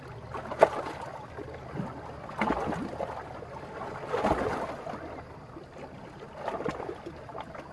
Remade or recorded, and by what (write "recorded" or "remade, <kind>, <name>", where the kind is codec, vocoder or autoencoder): recorded